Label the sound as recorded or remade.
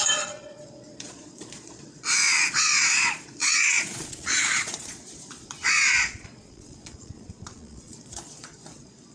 remade